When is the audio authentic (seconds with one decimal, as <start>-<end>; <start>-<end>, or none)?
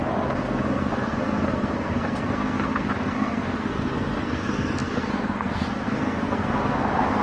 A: none